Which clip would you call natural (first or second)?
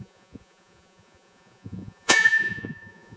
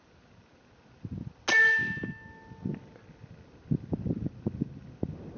second